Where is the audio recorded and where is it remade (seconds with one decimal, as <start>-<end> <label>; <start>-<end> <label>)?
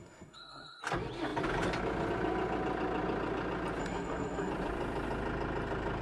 0.0-0.8 remade; 0.8-3.8 recorded; 3.8-4.5 remade; 4.5-6.0 recorded